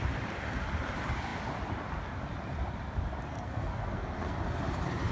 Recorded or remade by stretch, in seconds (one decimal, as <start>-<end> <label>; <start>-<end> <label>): 0.0-3.3 recorded; 3.3-4.4 remade; 4.4-5.1 recorded